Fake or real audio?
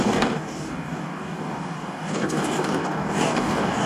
fake